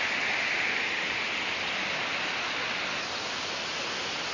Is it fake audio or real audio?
real